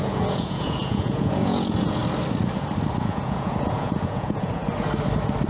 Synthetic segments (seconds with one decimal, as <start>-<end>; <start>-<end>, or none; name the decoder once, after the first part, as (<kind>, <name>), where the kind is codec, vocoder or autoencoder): 0.0-2.0 (vocoder, Vocos); 3.0-4.6